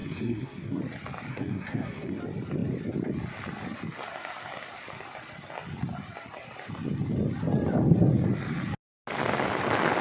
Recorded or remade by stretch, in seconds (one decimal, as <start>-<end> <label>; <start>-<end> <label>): 0.0-0.8 remade; 0.8-1.3 recorded; 1.3-2.2 remade; 2.2-10.0 recorded